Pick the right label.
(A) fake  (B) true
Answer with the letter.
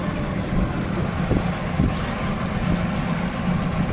B